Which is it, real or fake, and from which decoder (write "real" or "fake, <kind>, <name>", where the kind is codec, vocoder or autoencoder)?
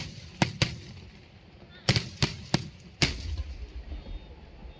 real